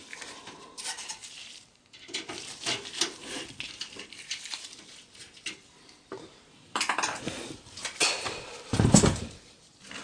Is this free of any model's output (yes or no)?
no